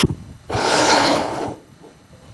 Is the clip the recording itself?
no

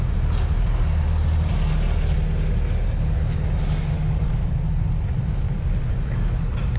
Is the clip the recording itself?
yes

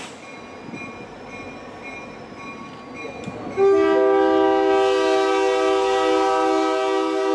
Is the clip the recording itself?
yes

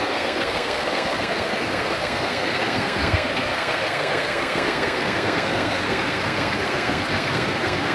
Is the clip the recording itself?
no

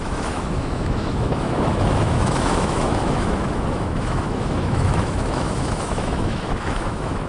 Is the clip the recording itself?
no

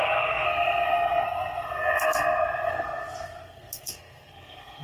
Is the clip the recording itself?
no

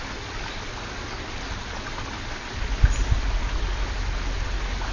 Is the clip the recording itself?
yes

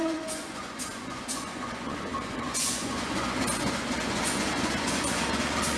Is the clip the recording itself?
no